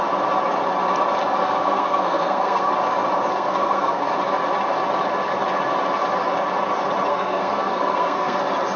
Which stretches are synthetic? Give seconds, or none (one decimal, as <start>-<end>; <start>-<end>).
1.4-2.7; 3.3-4.1; 7.1-8.4

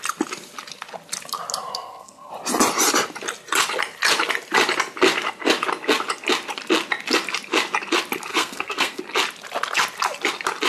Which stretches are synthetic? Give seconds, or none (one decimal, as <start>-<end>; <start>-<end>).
1.7-2.3; 8.3-9.0

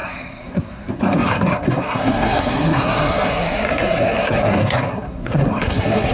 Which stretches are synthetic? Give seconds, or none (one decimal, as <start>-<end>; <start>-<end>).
0.0-6.1

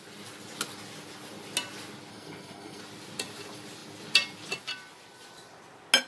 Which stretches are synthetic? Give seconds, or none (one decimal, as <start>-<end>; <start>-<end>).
2.1-2.8

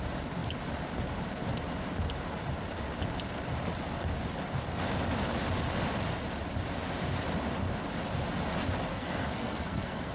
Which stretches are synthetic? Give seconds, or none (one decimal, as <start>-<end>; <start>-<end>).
8.9-10.1

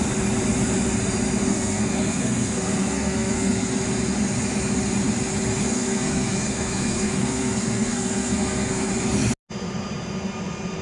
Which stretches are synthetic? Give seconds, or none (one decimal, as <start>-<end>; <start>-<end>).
1.5-3.7; 5.6-8.9